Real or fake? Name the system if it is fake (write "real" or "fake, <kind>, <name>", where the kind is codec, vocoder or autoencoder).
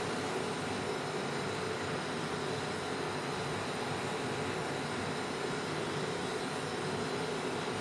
real